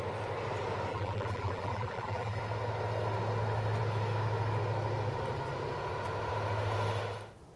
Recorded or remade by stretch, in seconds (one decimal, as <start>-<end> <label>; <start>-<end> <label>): 0.0-0.9 recorded; 0.9-2.4 remade; 2.4-7.6 recorded